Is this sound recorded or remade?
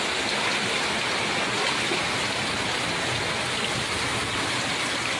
recorded